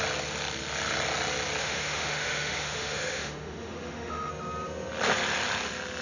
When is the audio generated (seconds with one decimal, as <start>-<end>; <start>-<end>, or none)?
1.6-4.3